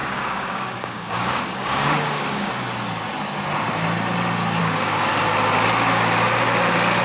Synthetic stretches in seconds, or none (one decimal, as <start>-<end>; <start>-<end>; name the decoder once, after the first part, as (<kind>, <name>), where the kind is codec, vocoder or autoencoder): 0.0-2.5 (codec, DAC); 4.6-5.1